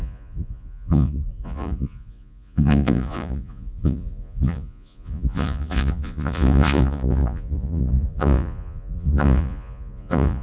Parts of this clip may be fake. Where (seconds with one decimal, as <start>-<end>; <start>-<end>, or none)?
0.0-10.4